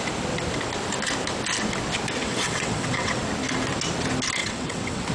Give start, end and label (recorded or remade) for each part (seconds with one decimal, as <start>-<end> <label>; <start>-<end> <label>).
0.0-2.2 recorded; 2.2-3.2 remade; 3.2-4.4 recorded; 4.4-5.1 remade